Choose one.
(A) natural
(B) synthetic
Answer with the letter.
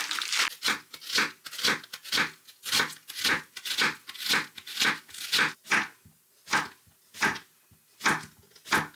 A